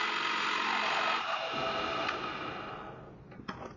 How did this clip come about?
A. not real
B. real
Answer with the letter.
B